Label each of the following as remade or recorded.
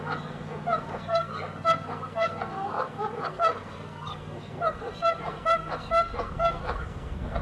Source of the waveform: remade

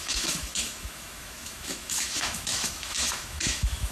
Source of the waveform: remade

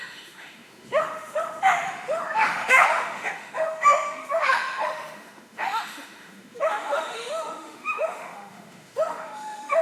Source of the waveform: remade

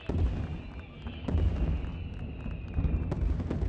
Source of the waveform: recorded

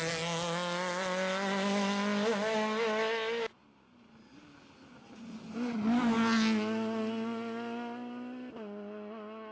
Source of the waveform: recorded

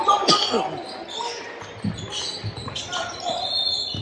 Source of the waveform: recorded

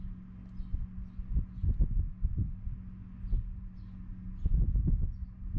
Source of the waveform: recorded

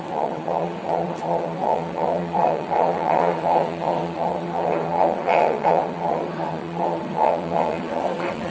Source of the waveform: remade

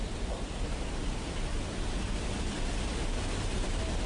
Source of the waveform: recorded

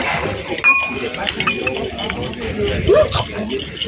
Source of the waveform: recorded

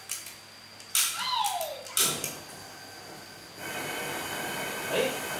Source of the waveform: recorded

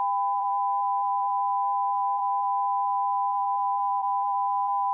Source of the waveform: remade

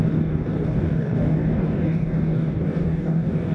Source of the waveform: remade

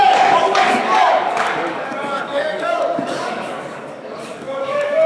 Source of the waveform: remade